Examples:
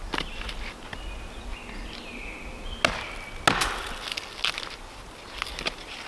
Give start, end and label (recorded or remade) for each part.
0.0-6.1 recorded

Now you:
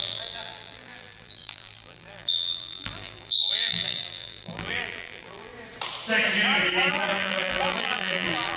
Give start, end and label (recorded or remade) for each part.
0.0-5.5 remade; 5.5-6.9 recorded; 6.9-8.6 remade

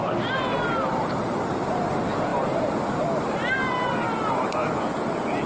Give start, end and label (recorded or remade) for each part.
0.0-0.9 recorded; 0.9-1.8 remade; 1.8-2.3 recorded; 2.3-4.7 remade; 4.7-5.5 recorded

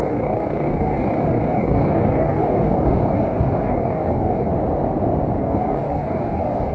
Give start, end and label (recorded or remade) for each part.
0.0-4.5 remade; 4.5-5.4 recorded; 5.4-6.7 remade

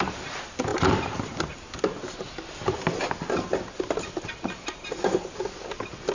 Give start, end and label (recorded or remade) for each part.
0.0-6.1 recorded

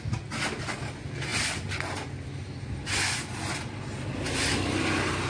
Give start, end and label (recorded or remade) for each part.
0.0-5.3 recorded

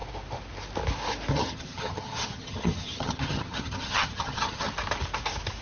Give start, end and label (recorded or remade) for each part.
0.0-1.3 recorded; 1.3-4.7 remade; 4.7-5.6 recorded